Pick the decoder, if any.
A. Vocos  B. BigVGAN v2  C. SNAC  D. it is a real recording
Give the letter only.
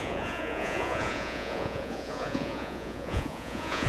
A